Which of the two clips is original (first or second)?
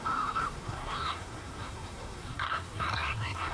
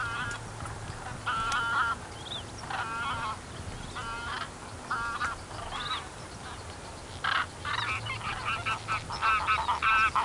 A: second